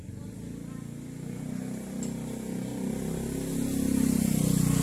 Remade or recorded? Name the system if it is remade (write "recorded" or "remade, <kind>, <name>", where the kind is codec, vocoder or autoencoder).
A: recorded